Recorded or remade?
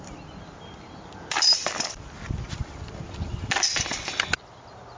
remade